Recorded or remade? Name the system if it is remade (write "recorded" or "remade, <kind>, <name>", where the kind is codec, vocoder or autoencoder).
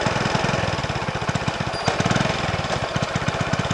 recorded